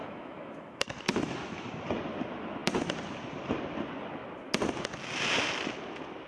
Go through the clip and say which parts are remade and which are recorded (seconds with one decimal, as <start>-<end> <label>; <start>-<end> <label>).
0.0-1.7 remade; 1.7-6.3 recorded